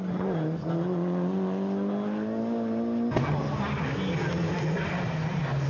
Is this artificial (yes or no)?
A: no